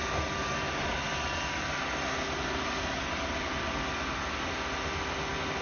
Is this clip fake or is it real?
real